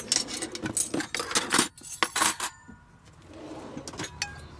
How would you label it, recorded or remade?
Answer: recorded